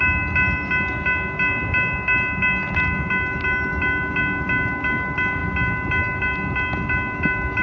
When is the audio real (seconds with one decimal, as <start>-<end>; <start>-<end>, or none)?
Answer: 0.0-7.6

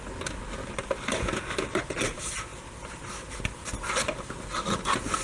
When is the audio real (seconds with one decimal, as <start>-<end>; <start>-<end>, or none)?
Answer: 0.0-5.2

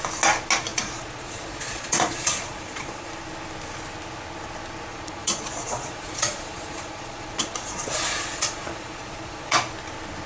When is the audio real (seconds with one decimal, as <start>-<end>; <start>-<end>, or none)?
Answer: 0.0-0.7; 3.1-4.9; 9.7-10.3

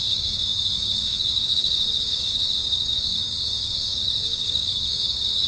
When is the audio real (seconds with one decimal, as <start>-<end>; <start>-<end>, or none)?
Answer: none

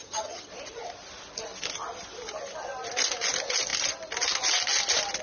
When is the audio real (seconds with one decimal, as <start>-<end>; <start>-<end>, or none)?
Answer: 0.5-5.2

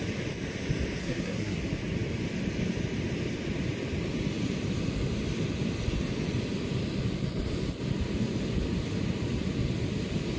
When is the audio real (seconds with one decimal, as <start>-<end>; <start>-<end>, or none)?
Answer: 0.0-1.0; 1.6-10.4